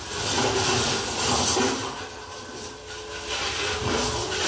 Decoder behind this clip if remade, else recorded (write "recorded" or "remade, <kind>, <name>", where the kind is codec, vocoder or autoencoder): recorded